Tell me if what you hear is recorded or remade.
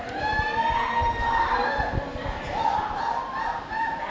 remade